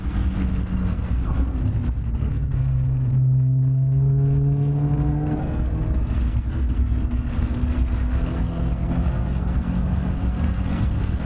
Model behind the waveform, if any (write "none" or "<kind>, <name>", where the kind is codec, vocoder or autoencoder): codec, SNAC